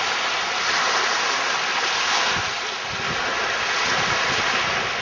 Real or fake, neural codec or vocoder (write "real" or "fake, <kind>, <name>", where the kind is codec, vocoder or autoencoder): real